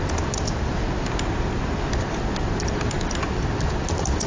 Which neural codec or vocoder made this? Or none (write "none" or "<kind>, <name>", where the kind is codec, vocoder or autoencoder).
none